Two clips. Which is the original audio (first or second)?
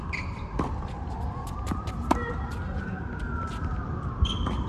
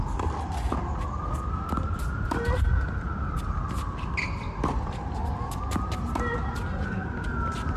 second